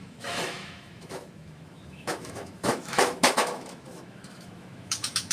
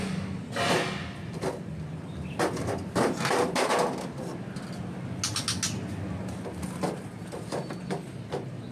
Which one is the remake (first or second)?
first